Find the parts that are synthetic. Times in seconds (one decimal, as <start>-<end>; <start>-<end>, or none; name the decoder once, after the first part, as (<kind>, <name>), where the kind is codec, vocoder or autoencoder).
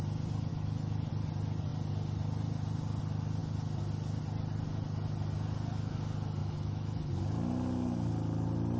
0.5-1.1 (autoencoder, DAC-VAE); 6.4-7.1